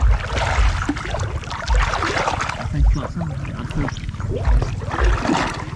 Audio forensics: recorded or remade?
recorded